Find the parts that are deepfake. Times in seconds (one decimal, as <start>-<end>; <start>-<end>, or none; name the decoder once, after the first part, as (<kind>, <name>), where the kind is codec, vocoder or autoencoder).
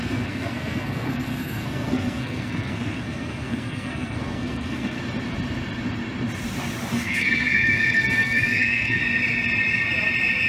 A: 0.0-5.0 (codec, SNAC); 6.9-9.0